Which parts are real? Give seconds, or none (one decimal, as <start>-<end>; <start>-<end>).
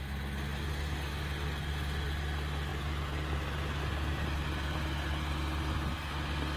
0.0-6.6